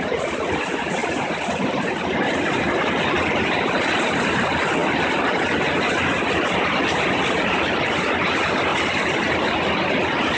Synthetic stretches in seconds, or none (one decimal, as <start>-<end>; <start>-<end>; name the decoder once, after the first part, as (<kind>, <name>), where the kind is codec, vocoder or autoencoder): none